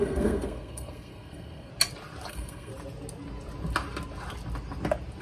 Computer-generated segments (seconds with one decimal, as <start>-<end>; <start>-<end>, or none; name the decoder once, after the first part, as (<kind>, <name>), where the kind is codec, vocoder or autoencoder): 0.0-1.7 (codec, SNAC); 2.3-2.7